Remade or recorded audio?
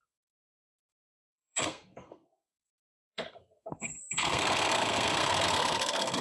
remade